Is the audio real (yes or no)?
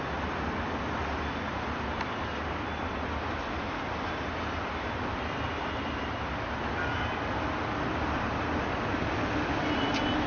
yes